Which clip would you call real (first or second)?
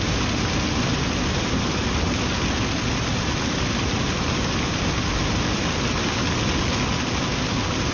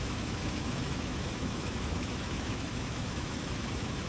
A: first